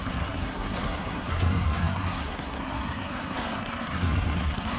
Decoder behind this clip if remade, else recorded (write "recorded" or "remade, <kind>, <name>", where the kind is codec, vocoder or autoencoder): remade, codec, SNAC